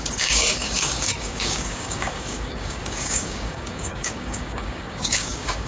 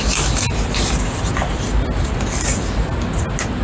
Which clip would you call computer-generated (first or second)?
first